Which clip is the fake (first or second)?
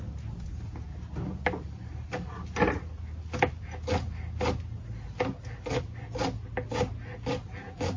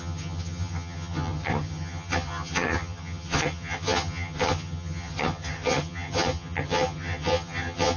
second